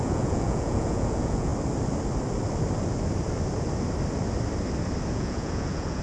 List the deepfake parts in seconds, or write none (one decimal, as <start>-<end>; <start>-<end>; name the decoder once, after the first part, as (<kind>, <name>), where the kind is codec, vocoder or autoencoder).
0.0-1.5 (vocoder, Vocos); 5.1-6.0